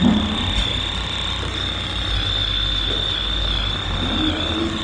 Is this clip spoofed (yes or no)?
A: no